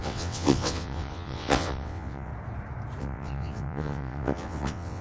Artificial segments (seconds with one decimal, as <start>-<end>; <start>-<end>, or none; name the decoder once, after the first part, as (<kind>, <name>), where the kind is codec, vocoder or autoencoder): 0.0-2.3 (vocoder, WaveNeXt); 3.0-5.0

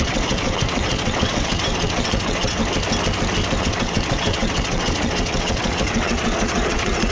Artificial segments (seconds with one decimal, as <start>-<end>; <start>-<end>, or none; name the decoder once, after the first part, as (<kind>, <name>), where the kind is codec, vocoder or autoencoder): 0.0-2.6 (vocoder, WaveNeXt); 3.6-7.1

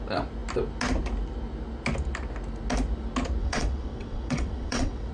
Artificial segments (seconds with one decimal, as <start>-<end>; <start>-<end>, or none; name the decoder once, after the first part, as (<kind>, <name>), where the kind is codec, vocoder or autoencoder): 3.4-5.1 (vocoder, WaveNeXt)

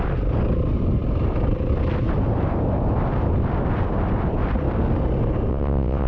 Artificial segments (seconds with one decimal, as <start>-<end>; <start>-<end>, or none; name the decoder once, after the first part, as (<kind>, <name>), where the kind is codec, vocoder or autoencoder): 5.5-6.1 (vocoder, WaveNeXt)

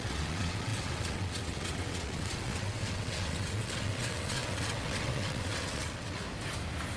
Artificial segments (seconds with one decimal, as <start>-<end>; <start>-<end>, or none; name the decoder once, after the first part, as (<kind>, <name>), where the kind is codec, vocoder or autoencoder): 0.0-6.2 (vocoder, WaveNeXt)

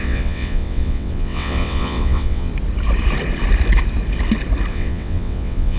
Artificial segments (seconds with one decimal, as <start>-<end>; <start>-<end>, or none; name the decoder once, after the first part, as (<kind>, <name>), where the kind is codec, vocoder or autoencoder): 0.0-2.5 (vocoder, WaveNeXt); 4.7-5.8

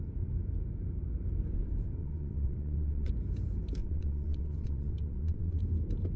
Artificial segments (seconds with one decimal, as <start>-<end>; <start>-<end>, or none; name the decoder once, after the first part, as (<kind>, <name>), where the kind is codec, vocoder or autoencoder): 2.0-3.1 (vocoder, WaveNeXt); 3.8-5.6